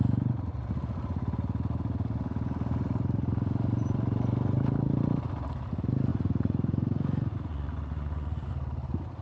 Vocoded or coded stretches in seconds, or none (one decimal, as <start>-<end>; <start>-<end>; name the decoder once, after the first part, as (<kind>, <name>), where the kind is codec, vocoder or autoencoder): 6.1-8.5 (vocoder, Vocos)